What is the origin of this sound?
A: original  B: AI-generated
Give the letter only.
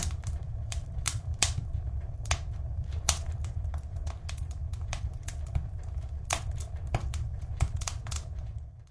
B